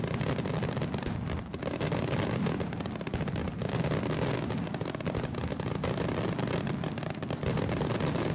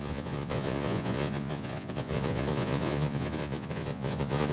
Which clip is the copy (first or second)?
second